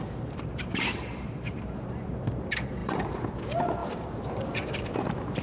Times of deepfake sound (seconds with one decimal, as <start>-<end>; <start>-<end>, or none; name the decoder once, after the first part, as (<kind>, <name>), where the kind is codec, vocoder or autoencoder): 0.0-2.1 (vocoder, BigVGAN v2); 2.8-3.4; 3.8-4.9